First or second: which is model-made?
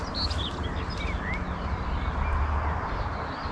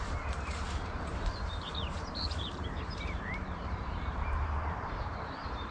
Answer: second